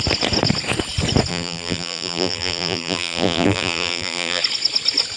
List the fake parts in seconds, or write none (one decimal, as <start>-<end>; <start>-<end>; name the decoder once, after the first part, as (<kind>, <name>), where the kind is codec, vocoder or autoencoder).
1.3-4.4 (vocoder, BigVGAN v2)